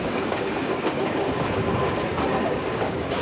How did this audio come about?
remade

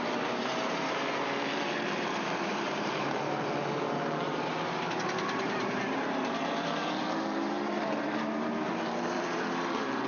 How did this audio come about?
remade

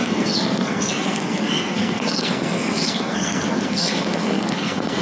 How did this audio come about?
remade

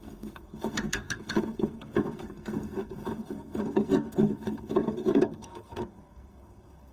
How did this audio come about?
remade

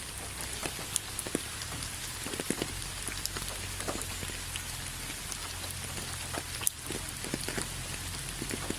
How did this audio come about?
recorded